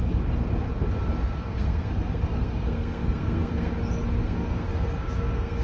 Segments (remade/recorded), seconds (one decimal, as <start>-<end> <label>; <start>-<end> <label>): 0.0-1.4 recorded; 1.4-3.7 remade; 3.7-4.2 recorded; 4.2-5.6 remade